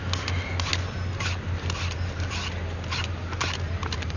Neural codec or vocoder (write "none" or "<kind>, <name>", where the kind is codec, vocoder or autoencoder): none